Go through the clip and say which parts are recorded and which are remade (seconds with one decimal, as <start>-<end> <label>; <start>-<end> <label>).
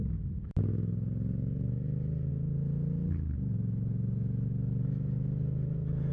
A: 0.0-6.1 recorded